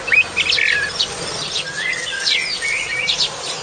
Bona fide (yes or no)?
yes